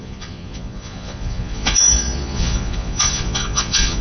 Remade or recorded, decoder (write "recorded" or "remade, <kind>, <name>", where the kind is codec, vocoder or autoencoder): remade, vocoder, Vocos